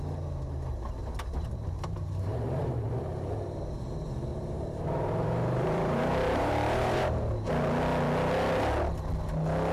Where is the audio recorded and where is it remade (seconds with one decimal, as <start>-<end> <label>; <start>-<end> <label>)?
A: 0.0-1.0 recorded; 1.0-2.9 remade; 2.9-4.3 recorded; 4.3-7.2 remade; 7.2-9.7 recorded